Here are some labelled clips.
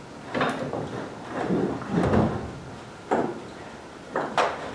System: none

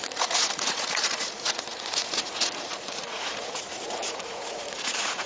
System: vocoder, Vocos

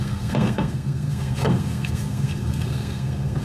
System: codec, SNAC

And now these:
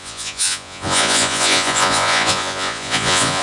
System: vocoder, Vocos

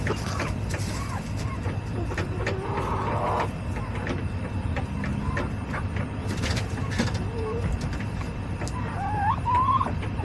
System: none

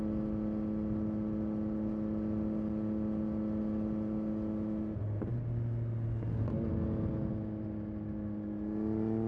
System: none